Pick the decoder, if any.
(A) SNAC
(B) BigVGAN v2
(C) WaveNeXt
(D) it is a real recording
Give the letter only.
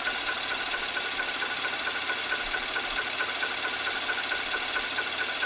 B